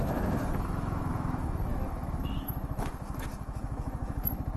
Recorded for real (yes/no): no